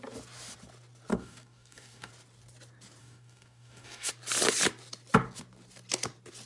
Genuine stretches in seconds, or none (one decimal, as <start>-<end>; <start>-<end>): 0.0-1.1; 2.1-3.0; 4.1-6.5

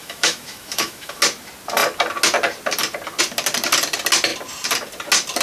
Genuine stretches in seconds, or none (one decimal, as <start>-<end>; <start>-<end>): 1.2-5.4

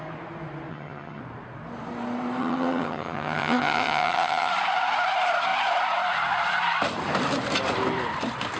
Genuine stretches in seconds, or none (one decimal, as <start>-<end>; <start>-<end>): 0.0-0.7; 1.2-2.4; 4.5-8.6

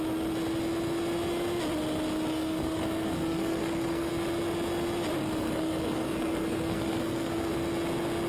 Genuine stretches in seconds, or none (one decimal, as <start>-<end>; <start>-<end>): 0.0-2.3; 4.1-5.2; 7.5-8.3

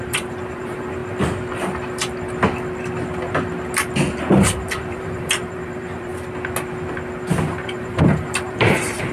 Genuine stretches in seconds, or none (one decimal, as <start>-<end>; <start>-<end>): 1.0-4.3; 6.1-7.3